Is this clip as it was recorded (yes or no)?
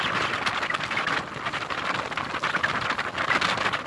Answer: yes